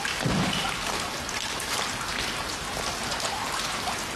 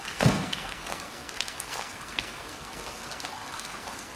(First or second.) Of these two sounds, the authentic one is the first